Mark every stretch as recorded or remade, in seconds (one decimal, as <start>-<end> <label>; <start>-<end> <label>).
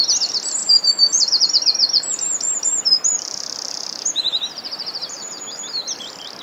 0.0-0.6 recorded; 0.6-1.4 remade; 1.4-1.8 recorded; 1.8-5.6 remade; 5.6-6.4 recorded